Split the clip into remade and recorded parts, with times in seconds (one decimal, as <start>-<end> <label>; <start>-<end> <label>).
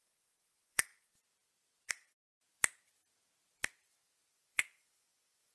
0.0-0.9 remade; 0.9-1.9 recorded; 1.9-2.3 remade; 2.3-4.3 recorded; 4.3-5.5 remade